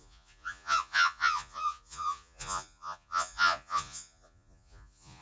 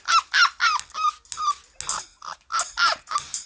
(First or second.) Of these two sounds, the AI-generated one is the first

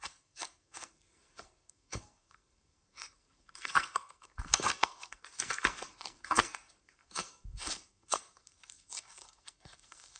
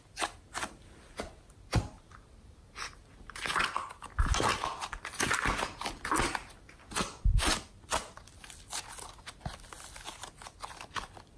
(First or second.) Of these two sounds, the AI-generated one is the first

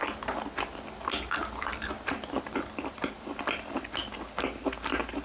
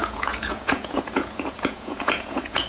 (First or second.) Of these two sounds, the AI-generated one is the second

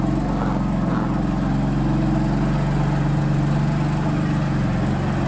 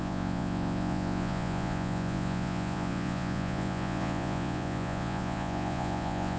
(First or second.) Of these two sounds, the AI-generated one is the second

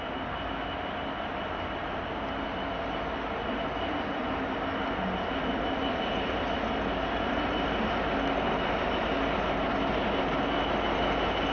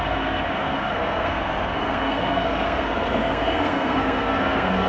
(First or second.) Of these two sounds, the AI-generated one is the second